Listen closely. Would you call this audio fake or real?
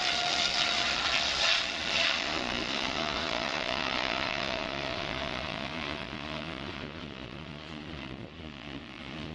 fake